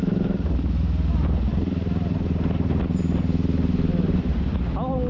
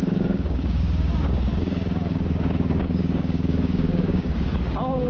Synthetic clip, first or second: second